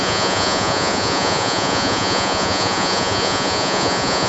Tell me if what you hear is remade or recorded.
remade